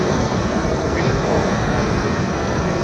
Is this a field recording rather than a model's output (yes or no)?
no